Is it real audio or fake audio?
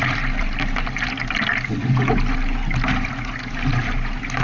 real